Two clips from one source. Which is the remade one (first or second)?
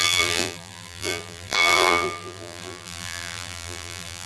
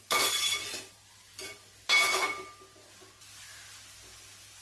first